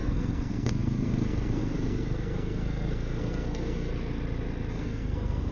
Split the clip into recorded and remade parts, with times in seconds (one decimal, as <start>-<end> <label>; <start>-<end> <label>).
0.0-3.9 remade; 3.9-4.7 recorded; 4.7-5.5 remade